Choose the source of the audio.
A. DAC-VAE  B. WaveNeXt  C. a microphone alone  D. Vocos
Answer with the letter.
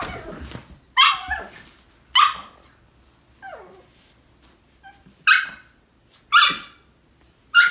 C